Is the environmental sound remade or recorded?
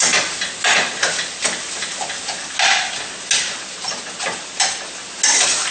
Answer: recorded